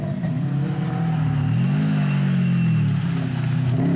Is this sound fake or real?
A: real